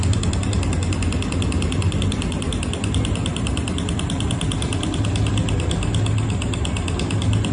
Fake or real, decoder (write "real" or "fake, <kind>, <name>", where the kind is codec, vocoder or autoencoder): real